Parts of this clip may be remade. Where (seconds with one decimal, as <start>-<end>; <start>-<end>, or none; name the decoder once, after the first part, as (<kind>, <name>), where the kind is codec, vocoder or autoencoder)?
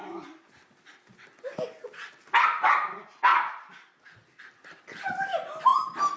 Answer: none